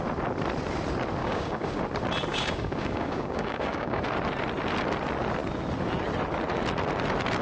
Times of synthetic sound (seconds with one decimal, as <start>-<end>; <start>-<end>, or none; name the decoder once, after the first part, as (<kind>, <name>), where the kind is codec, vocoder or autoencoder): 1.2-1.8 (codec, DAC); 2.3-4.0

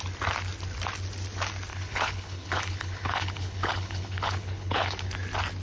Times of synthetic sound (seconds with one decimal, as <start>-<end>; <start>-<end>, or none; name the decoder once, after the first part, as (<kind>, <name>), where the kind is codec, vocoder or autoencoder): 1.7-5.1 (codec, HILCodec)

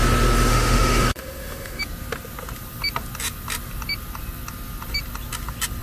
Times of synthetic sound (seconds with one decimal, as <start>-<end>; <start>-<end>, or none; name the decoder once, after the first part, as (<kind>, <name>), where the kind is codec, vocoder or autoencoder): 0.5-1.8 (autoencoder, DAC-VAE)